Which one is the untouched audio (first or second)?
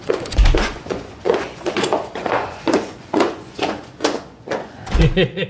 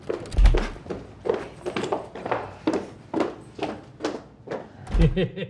second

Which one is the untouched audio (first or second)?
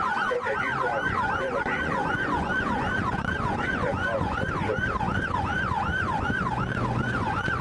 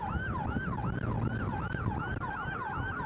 second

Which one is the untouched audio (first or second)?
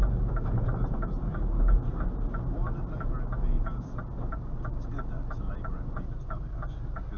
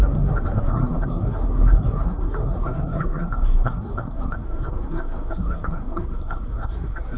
first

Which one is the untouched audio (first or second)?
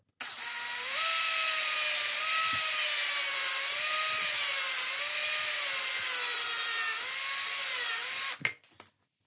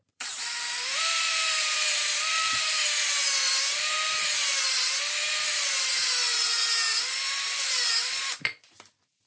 first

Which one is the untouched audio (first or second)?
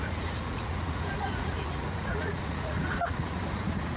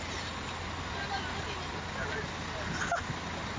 second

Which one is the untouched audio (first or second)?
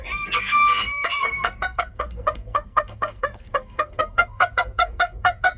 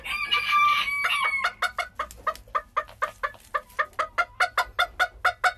second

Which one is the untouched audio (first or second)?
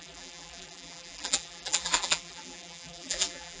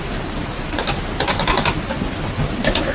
second